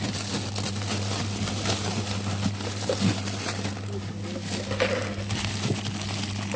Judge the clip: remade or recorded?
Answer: recorded